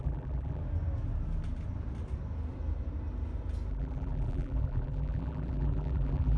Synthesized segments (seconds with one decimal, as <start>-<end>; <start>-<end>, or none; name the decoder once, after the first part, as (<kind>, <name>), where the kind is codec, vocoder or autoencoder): 0.0-0.6 (vocoder, BigVGAN v2); 3.7-6.4